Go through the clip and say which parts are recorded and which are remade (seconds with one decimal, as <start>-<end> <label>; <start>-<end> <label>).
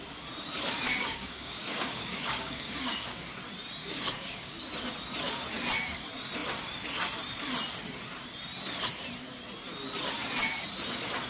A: 0.0-0.9 recorded; 0.9-3.3 remade; 3.3-3.8 recorded; 3.8-4.6 remade; 4.6-11.3 recorded